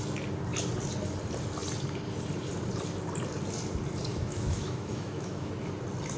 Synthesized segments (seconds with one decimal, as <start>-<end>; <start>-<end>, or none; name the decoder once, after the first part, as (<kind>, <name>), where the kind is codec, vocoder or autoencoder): 4.1-5.5 (autoencoder, DAC-VAE)